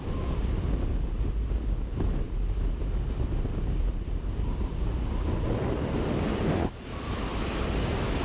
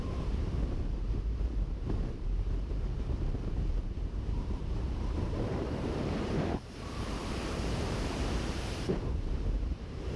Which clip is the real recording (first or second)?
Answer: first